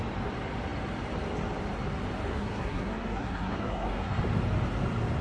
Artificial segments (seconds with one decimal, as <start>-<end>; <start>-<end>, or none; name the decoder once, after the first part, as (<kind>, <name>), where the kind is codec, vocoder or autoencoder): 2.3-4.2 (codec, SNAC)